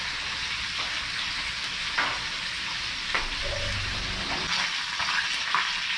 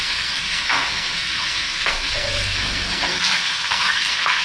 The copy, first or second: second